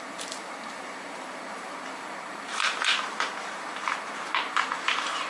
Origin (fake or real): fake